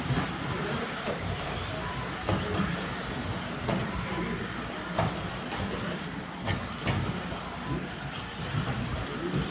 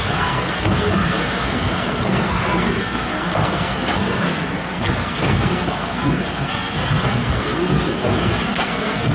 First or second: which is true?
first